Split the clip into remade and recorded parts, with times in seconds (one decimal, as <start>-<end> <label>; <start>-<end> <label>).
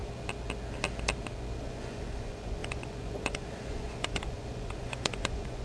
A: 0.0-1.6 recorded; 1.6-5.6 remade